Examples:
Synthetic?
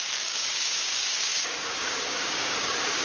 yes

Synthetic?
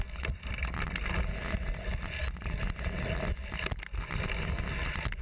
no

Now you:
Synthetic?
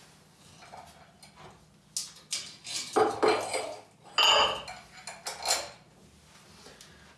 no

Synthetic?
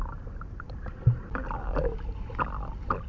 no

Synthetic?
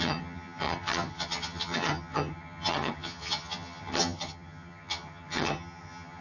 yes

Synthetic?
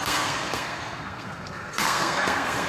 yes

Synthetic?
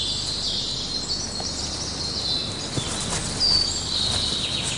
no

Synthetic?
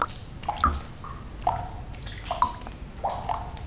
no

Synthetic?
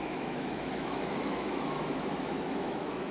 yes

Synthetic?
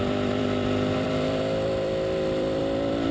yes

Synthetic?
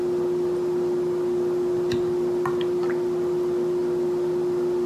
no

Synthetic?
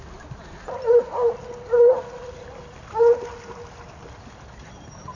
no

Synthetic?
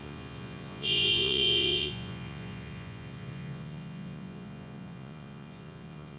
yes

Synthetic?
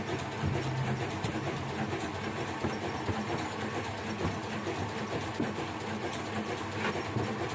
no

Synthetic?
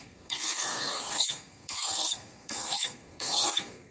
yes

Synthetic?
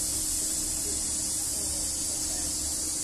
no